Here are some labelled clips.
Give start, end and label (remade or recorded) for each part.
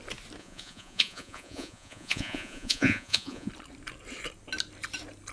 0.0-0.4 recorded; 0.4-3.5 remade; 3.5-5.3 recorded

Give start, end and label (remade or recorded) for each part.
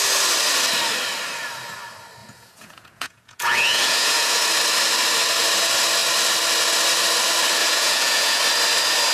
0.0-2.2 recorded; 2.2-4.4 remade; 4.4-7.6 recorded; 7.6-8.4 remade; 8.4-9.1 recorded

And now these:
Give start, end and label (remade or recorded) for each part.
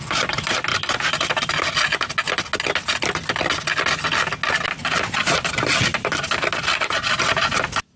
0.0-8.0 recorded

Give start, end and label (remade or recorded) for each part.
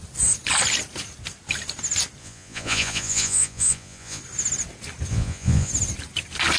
0.0-2.2 recorded; 2.2-4.2 remade; 4.2-5.1 recorded; 5.1-5.7 remade; 5.7-6.6 recorded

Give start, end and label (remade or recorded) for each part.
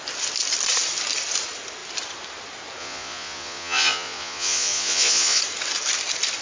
0.0-2.8 recorded; 2.8-5.4 remade; 5.4-6.4 recorded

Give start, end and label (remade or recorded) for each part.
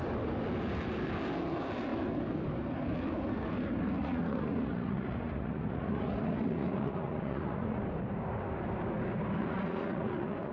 0.0-4.0 recorded; 4.0-7.8 remade; 7.8-9.4 recorded; 9.4-10.5 remade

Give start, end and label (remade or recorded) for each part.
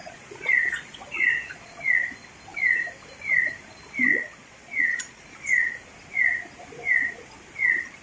0.0-1.8 remade; 1.8-4.1 recorded; 4.1-5.2 remade; 5.2-8.0 recorded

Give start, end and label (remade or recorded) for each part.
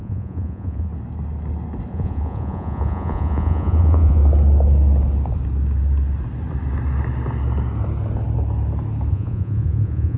0.0-0.9 remade; 0.9-1.9 recorded; 1.9-4.2 remade; 4.2-9.1 recorded; 9.1-10.2 remade